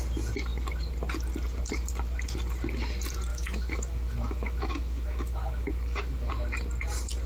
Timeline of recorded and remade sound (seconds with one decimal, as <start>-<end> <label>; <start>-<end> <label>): 0.0-3.3 recorded; 3.3-6.3 remade; 6.3-7.3 recorded